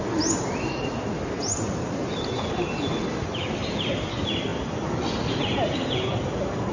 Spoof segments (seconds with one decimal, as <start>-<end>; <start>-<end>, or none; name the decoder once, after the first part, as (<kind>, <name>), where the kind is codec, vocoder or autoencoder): none